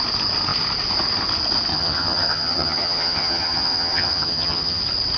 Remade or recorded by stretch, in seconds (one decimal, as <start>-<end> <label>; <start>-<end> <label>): 0.0-1.7 recorded; 1.7-4.8 remade; 4.8-5.2 recorded